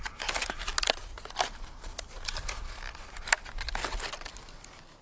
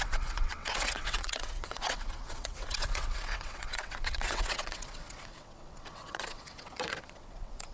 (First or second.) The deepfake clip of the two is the second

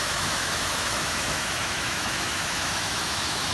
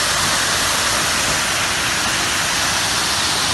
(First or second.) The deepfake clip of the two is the first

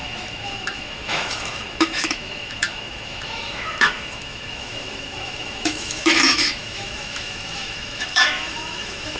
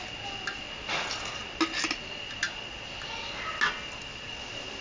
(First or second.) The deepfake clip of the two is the first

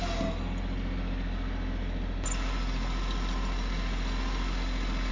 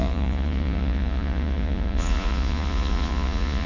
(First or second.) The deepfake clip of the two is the second